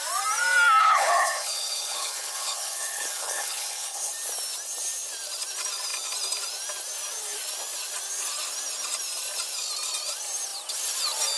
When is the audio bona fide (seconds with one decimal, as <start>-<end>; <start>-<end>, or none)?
0.0-0.8; 4.1-11.4